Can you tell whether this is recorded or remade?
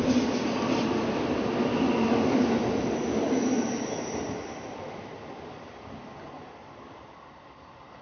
recorded